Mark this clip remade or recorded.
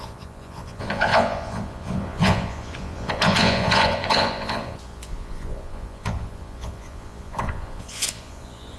remade